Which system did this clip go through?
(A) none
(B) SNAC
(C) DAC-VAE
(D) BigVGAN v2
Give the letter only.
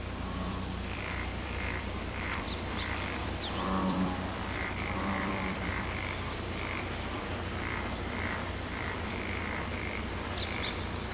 D